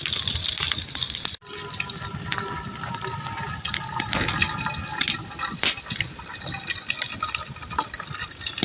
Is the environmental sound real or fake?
real